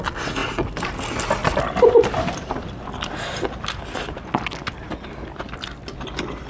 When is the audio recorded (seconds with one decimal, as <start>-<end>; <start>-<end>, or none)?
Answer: 0.0-6.5